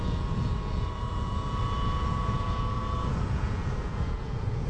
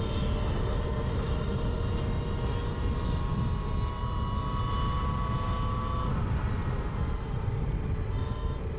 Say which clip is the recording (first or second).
second